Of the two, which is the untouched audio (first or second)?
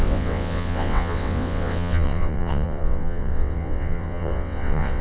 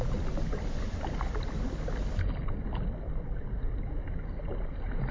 second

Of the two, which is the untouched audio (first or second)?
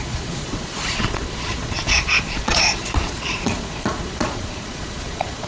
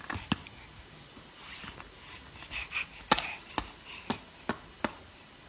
second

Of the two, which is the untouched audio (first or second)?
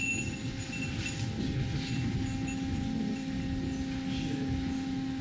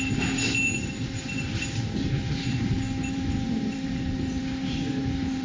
first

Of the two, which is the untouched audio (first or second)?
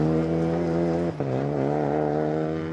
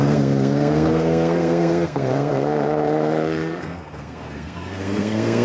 first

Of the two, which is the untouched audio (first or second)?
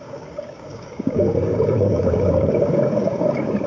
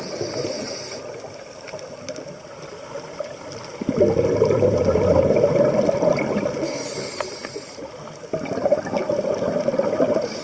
second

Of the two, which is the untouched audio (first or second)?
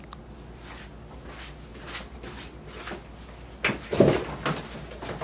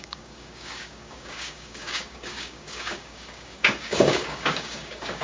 first